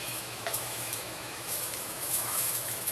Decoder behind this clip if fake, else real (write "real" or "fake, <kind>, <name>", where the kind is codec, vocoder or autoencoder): fake, autoencoder, DAC-VAE